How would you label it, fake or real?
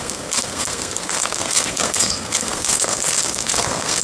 fake